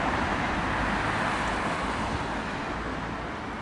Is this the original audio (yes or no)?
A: yes